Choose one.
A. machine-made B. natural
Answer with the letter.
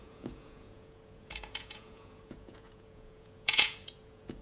A